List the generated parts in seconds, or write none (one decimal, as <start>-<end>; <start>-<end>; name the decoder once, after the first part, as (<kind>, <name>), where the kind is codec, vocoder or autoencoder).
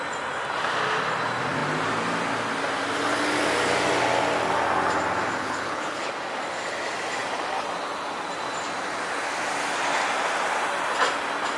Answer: 5.4-6.1 (codec, HILCodec)